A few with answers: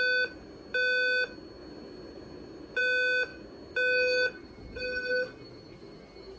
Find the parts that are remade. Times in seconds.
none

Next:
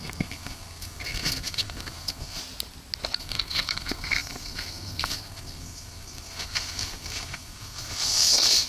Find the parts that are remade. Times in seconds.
0.0-2.4 (codec, SNAC); 3.2-8.7

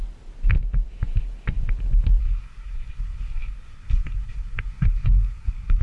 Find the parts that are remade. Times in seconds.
2.2-5.8 (codec, SNAC)